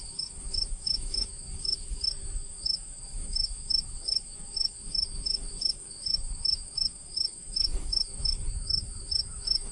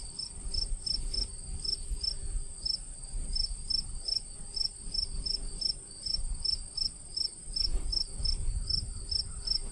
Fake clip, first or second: first